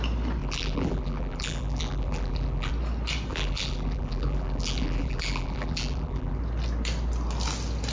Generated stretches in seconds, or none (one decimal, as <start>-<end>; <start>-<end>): 0.4-2.7; 3.3-6.4